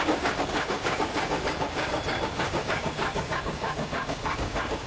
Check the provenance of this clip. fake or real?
fake